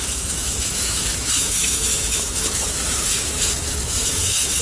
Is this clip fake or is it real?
fake